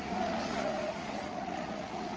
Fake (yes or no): yes